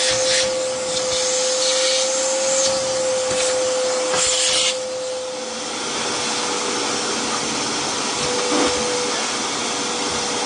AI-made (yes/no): no